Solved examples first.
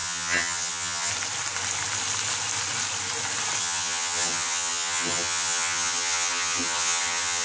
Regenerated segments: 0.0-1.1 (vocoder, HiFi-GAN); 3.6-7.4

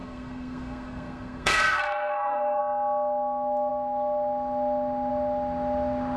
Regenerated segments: 0.0-2.6 (codec, SNAC)

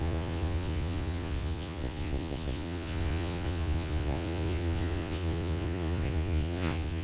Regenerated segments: 0.0-7.0 (vocoder, Vocos)

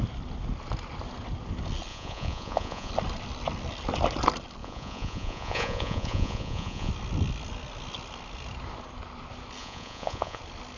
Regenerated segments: 1.9-2.9 (vocoder, Vocos); 4.6-6.9; 9.6-10.4

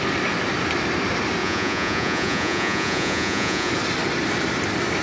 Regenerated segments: 1.4-3.7 (vocoder, Vocos)

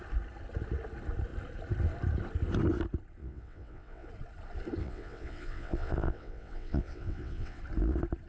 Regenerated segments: 3.2-4.1 (vocoder, WaveNeXt); 4.8-7.6